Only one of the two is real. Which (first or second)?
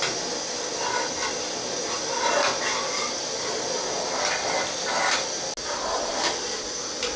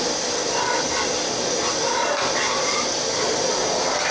first